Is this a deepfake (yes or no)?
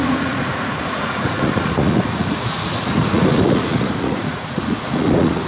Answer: yes